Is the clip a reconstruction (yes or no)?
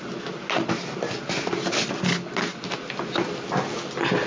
no